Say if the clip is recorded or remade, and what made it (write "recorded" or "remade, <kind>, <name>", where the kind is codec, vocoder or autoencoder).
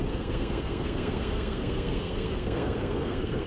remade, codec, SNAC